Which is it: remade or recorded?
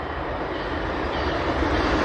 recorded